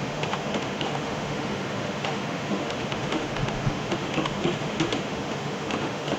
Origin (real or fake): fake